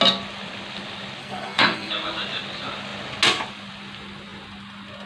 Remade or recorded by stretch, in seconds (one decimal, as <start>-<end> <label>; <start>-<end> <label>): 0.0-1.2 recorded; 1.2-1.9 remade; 1.9-5.1 recorded

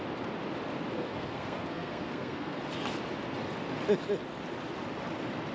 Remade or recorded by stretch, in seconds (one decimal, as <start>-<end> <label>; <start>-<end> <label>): 0.0-0.9 recorded; 0.9-2.6 remade; 2.6-5.5 recorded

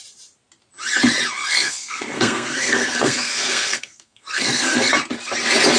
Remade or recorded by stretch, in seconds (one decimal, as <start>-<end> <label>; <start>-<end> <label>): 0.0-1.4 recorded; 1.4-4.9 remade; 4.9-5.8 recorded

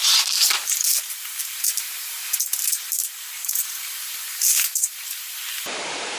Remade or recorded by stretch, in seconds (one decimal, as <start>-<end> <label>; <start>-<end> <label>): 0.0-6.2 remade

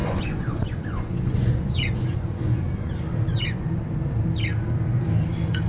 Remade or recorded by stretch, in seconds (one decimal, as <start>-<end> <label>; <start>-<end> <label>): 0.0-2.9 remade; 2.9-3.3 recorded; 3.3-3.8 remade; 3.8-5.7 recorded

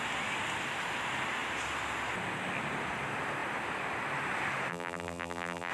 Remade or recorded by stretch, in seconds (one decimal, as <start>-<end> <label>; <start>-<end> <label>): 0.0-4.7 recorded; 4.7-5.7 remade

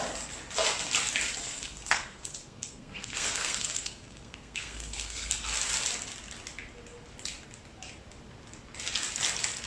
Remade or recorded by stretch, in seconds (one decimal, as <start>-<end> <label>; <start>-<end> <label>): 0.0-1.4 recorded; 1.4-5.3 remade; 5.3-9.7 recorded